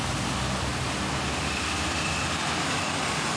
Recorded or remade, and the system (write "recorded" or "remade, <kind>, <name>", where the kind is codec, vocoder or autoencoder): recorded